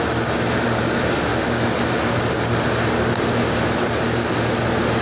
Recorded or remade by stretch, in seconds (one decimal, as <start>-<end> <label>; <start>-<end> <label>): 0.0-5.0 recorded